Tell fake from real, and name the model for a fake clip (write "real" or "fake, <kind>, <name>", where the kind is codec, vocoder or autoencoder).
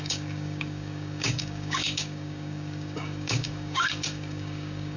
fake, codec, DAC